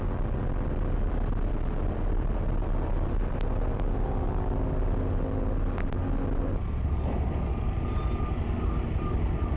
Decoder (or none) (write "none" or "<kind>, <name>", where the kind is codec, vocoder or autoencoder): none